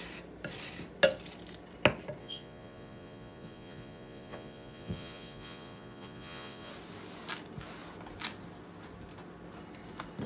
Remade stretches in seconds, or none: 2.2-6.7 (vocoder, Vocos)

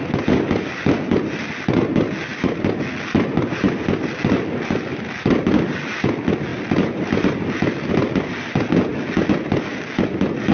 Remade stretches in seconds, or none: none